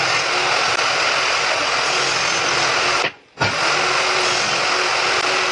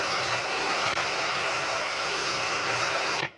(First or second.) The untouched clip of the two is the first